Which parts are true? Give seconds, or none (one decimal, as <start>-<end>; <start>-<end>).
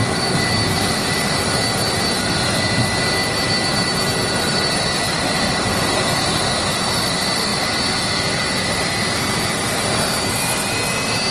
1.6-11.3